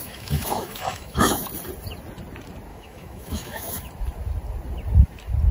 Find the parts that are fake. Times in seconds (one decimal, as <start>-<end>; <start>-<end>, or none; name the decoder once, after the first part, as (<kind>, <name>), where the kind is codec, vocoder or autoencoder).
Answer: 0.0-1.5 (autoencoder, DAC-VAE); 2.7-3.9